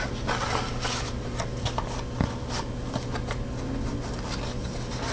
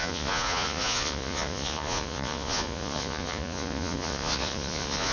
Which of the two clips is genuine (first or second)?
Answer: first